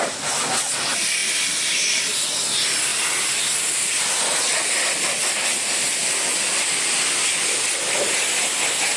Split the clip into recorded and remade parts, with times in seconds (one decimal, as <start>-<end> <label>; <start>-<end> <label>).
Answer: 0.0-9.0 recorded